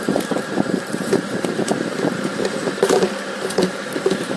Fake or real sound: fake